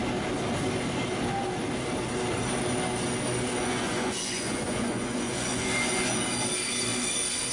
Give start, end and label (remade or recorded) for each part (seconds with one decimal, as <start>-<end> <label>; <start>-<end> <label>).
0.0-3.6 recorded; 3.6-6.1 remade; 6.1-7.5 recorded

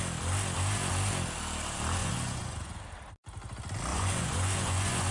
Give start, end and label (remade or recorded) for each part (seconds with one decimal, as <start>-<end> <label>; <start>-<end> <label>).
0.0-2.0 recorded; 2.0-2.8 remade; 2.8-3.9 recorded; 3.9-5.1 remade

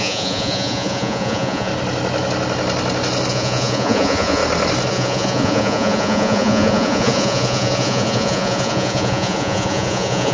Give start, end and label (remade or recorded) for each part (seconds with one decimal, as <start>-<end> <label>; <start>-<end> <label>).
0.0-1.7 remade; 1.7-3.3 recorded; 3.3-4.4 remade; 4.4-4.9 recorded; 4.9-10.3 remade

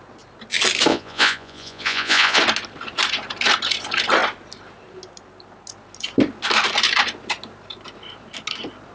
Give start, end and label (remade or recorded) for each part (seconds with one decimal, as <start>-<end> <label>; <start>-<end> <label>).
0.0-0.9 recorded; 0.9-2.4 remade; 2.4-8.9 recorded

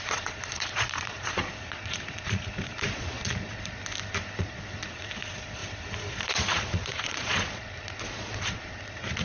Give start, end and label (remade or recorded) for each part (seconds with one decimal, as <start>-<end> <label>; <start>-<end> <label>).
0.0-3.8 remade; 3.8-4.4 recorded; 4.4-5.6 remade; 5.6-6.1 recorded; 6.1-9.2 remade

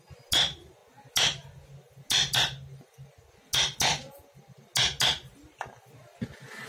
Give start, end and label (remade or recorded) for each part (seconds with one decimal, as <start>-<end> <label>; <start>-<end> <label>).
0.0-6.7 recorded

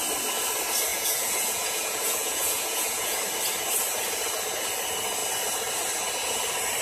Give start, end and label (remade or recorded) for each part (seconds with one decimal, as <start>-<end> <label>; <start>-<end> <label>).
0.0-0.9 recorded; 0.9-3.2 remade; 3.2-6.8 recorded